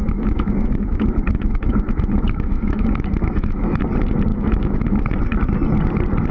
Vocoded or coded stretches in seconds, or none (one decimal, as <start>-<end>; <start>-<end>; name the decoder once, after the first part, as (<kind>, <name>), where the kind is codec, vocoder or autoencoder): 0.0-3.8 (autoencoder, DAC-VAE); 4.3-5.0